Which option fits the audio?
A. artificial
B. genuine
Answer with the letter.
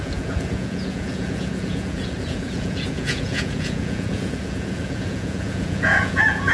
A